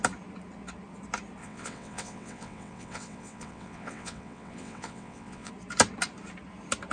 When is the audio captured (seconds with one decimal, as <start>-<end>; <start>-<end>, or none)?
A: 0.0-1.4; 5.5-6.9

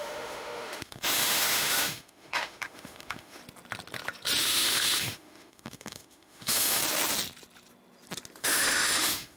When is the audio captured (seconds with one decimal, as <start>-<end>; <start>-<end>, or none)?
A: 3.4-4.4; 6.8-8.4

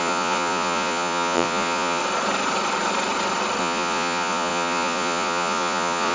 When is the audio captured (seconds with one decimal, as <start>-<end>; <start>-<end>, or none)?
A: 2.0-3.6

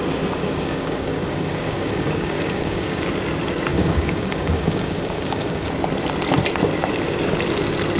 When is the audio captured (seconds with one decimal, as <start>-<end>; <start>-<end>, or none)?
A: 0.0-0.4; 3.0-3.7; 5.7-8.0